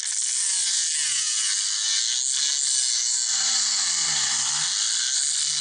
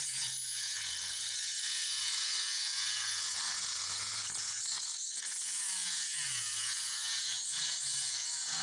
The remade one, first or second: second